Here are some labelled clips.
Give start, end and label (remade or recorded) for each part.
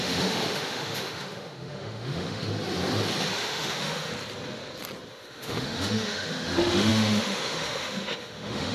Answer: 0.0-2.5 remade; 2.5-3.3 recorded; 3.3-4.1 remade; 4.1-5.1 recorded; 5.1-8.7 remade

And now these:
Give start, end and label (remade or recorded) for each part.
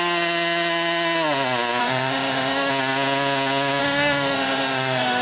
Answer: 0.0-1.8 recorded; 1.8-2.7 remade; 2.7-3.8 recorded; 3.8-5.2 remade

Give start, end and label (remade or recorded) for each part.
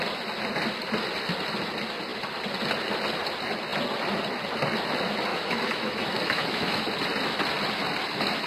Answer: 0.0-5.3 recorded; 5.3-6.8 remade; 6.8-8.5 recorded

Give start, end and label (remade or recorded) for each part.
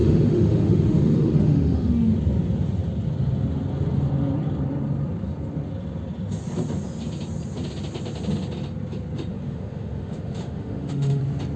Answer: 0.0-2.1 remade; 2.1-9.3 recorded; 9.3-11.2 remade; 11.2-11.6 recorded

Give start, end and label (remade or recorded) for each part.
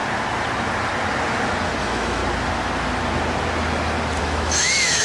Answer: 0.0-1.8 recorded; 1.8-2.2 remade; 2.2-4.2 recorded; 4.2-5.0 remade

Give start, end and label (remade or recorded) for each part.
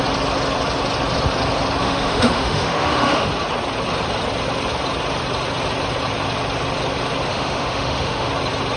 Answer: 0.0-1.8 recorded; 1.8-3.3 remade; 3.3-7.3 recorded; 7.3-8.3 remade; 8.3-8.8 recorded